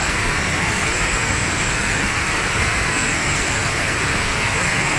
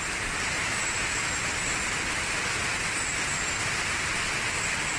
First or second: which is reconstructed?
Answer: first